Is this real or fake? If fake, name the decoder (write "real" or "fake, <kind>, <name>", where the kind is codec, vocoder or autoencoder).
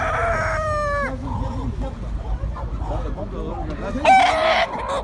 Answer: real